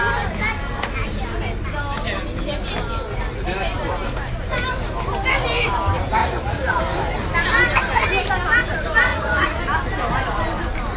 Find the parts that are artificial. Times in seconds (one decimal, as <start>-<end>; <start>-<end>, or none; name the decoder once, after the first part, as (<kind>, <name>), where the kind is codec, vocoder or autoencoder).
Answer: 6.2-6.8 (vocoder, Vocos); 9.1-9.6